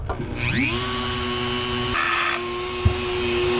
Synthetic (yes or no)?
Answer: no